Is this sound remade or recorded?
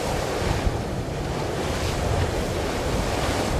recorded